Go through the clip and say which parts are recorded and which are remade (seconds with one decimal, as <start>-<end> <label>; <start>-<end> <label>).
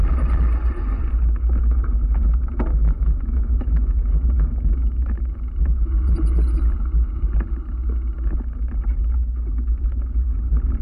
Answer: 0.0-2.8 recorded; 2.8-5.5 remade; 5.5-10.8 recorded